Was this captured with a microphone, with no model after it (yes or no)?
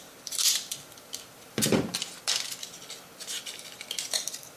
yes